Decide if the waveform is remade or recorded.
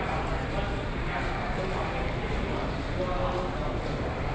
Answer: recorded